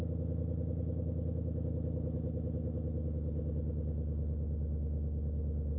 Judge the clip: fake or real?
real